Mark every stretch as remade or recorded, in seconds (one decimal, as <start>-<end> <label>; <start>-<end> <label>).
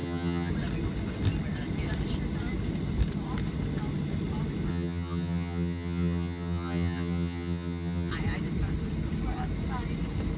0.0-0.5 remade; 0.5-4.7 recorded; 4.7-8.1 remade; 8.1-10.4 recorded